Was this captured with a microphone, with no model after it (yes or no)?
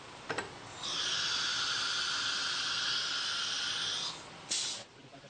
yes